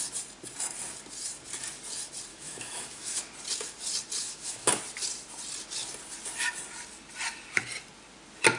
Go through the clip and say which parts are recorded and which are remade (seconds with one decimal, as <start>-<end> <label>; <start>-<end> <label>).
0.0-2.3 recorded; 2.3-3.2 remade; 3.2-4.2 recorded; 4.2-4.8 remade; 4.8-8.6 recorded